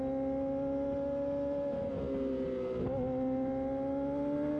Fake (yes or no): no